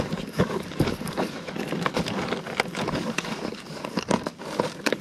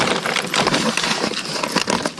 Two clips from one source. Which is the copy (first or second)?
first